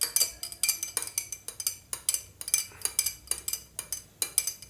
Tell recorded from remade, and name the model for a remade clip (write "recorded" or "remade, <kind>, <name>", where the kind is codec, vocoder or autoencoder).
recorded